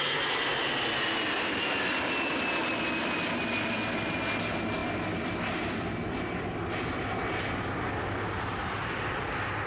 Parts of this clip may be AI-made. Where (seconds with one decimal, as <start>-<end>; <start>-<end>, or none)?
none